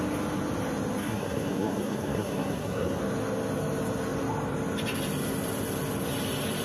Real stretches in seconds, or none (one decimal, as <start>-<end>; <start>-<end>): 0.0-1.0; 3.0-6.6